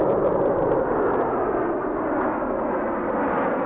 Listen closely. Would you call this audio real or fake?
real